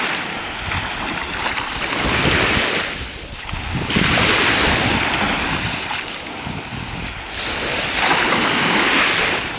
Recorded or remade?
recorded